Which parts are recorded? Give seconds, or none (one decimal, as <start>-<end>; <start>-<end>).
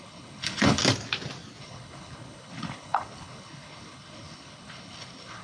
0.8-1.6